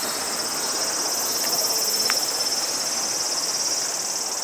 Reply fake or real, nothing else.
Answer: real